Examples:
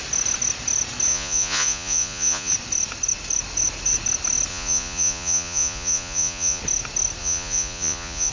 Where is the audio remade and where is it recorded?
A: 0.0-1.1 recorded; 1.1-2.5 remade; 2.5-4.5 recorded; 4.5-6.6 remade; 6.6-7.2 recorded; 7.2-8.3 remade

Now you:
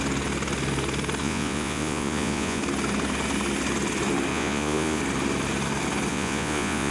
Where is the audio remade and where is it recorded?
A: 0.0-1.2 recorded; 1.2-2.6 remade; 2.6-4.3 recorded; 4.3-5.0 remade; 5.0-6.1 recorded; 6.1-6.9 remade

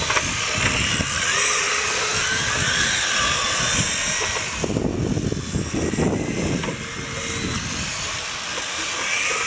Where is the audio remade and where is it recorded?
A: 0.0-9.5 recorded

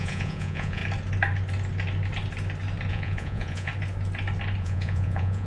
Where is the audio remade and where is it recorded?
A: 0.0-0.8 remade; 0.8-2.9 recorded; 2.9-3.7 remade; 3.7-4.6 recorded; 4.6-5.5 remade

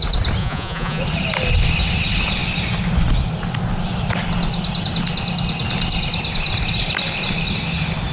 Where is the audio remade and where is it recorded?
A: 0.0-0.4 recorded; 0.4-1.0 remade; 1.0-8.1 recorded

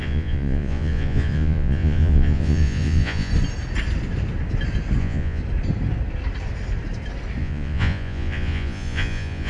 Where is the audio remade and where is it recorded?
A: 0.0-3.3 remade; 3.3-5.0 recorded; 5.0-5.4 remade; 5.4-7.4 recorded; 7.4-9.5 remade

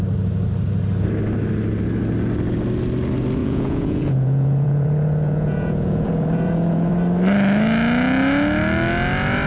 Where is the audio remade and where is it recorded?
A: 0.0-3.4 recorded; 3.4-6.9 remade; 6.9-9.5 recorded

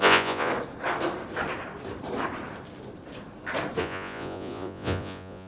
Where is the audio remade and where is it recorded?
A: 0.0-0.5 remade; 0.5-3.8 recorded; 3.8-5.5 remade